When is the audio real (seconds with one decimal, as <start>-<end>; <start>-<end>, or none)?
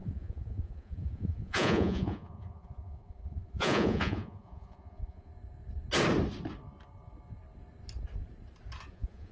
5.3-8.9